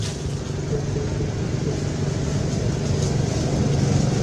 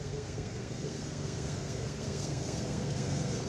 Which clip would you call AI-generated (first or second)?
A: second